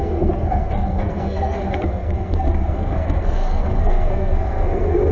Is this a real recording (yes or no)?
no